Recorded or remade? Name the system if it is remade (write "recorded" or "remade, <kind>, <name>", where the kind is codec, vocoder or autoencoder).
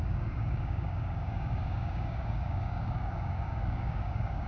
remade, codec, DAC